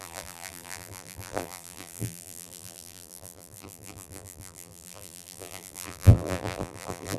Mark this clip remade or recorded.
remade